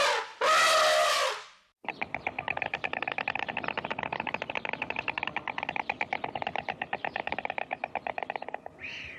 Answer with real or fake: real